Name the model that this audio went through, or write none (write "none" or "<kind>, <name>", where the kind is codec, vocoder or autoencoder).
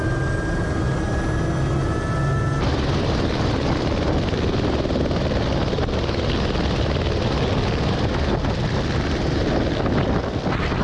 none